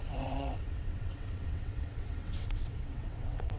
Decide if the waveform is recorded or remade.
remade